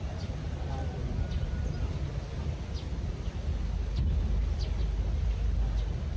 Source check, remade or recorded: recorded